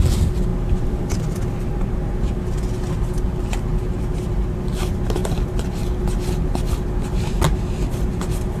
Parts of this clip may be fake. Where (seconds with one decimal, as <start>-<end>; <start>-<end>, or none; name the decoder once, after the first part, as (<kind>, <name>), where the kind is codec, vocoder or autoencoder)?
none